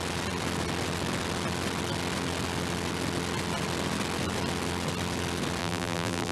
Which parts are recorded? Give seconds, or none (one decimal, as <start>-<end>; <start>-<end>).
0.0-5.6